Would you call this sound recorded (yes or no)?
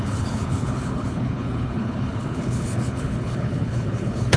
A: no